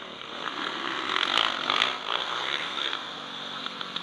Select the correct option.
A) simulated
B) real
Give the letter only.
A